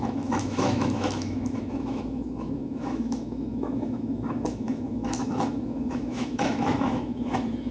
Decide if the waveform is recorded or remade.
remade